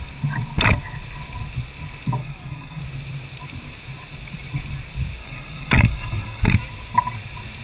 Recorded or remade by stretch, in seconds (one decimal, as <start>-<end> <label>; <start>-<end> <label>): 0.0-2.2 recorded; 2.2-2.8 remade; 2.8-5.2 recorded; 5.2-6.5 remade; 6.5-7.6 recorded